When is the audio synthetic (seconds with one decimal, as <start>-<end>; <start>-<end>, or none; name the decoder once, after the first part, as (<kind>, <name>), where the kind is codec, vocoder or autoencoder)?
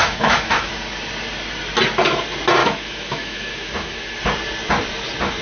0.0-0.7 (autoencoder, DAC-VAE); 2.6-4.2